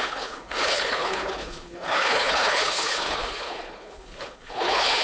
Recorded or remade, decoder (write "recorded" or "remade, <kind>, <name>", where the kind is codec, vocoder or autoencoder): remade, codec, HILCodec